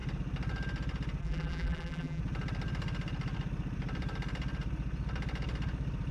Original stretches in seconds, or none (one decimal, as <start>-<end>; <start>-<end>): 0.0-1.2; 2.2-6.1